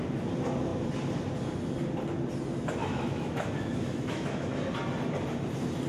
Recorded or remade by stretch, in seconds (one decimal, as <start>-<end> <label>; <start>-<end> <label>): 0.0-2.8 recorded; 2.8-4.6 remade; 4.6-5.9 recorded